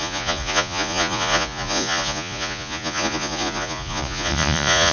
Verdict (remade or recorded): remade